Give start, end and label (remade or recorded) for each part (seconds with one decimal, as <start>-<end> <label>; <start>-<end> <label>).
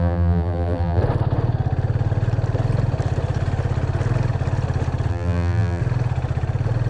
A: 0.0-1.0 remade; 1.0-5.1 recorded; 5.1-5.8 remade; 5.8-6.9 recorded